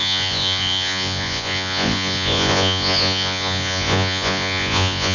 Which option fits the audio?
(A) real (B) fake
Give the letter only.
B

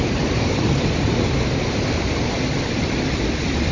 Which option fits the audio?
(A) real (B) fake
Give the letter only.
A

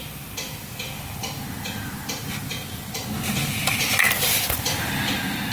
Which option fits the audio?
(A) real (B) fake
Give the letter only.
A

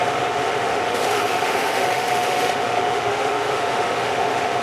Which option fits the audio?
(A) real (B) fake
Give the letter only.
B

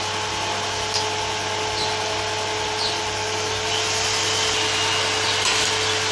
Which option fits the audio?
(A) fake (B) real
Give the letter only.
B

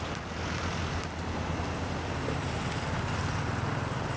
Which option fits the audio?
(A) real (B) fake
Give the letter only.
A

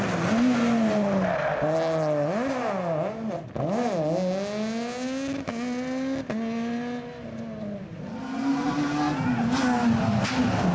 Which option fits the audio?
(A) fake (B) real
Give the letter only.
B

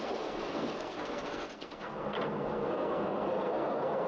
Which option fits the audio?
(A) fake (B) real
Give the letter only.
A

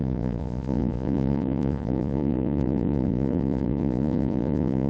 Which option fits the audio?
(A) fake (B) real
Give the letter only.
A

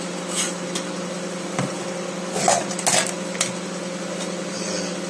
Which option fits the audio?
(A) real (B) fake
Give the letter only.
A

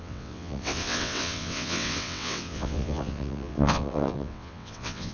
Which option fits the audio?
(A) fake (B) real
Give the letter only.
A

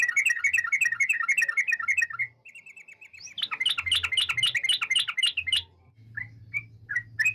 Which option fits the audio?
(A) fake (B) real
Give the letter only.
B